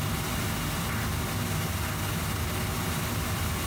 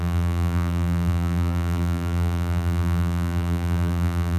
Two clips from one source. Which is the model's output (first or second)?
second